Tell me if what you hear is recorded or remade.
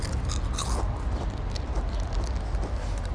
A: recorded